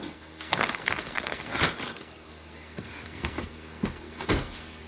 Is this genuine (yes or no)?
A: no